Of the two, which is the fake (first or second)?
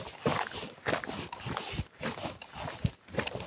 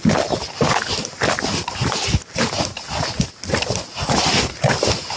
second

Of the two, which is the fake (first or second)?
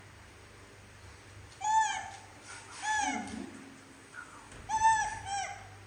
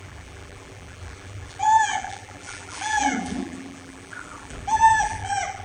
second